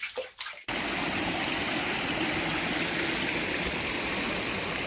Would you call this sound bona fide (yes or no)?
yes